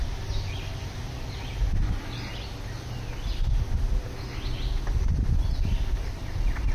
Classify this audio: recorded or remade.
recorded